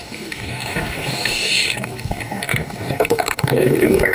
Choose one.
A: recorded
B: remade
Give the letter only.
B